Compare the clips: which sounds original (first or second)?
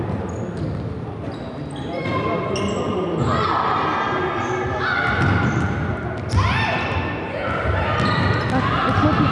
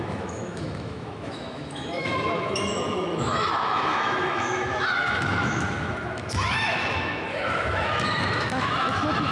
first